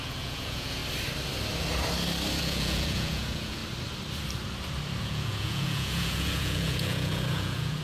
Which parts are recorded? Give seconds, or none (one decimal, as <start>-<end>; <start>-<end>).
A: 0.8-2.4; 3.6-5.0